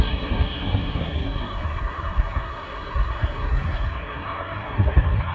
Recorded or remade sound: remade